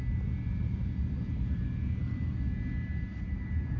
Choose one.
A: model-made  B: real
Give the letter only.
B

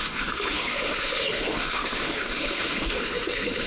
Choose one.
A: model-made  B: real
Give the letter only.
A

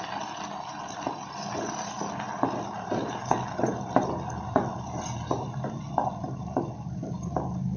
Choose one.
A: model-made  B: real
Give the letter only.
B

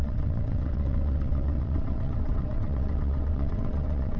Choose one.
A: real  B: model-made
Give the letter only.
B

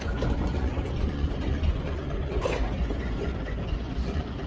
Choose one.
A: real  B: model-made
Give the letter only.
B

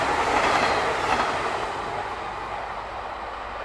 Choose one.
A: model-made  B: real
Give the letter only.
B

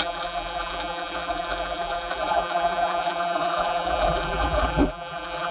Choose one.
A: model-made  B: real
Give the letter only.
A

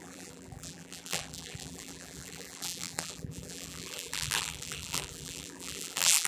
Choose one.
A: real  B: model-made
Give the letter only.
B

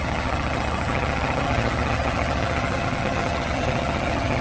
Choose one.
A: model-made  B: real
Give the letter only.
A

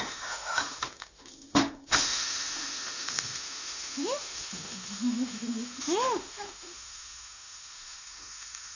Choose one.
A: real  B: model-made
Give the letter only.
B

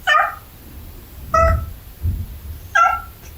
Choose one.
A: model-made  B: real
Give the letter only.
B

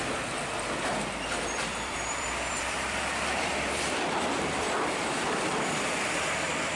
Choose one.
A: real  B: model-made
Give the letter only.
B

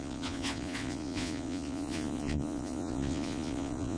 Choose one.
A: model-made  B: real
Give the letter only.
A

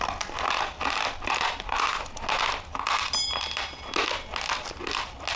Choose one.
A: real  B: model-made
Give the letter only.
A